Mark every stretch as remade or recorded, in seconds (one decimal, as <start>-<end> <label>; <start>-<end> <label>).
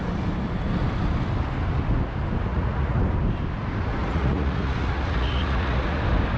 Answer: 0.0-2.5 recorded; 2.5-3.0 remade; 3.0-4.0 recorded; 4.0-6.0 remade; 6.0-6.4 recorded